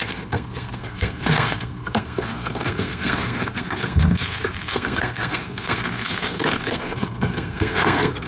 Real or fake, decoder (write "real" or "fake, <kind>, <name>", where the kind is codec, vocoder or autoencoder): fake, codec, SNAC